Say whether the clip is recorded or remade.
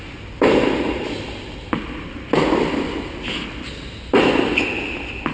recorded